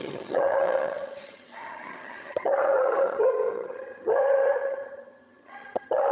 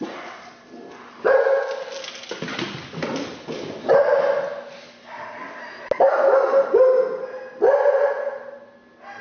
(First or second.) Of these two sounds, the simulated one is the first